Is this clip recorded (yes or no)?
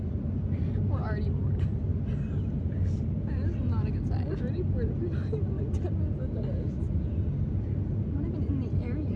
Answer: yes